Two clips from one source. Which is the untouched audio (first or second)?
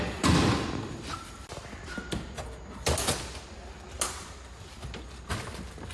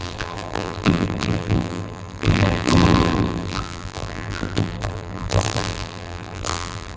first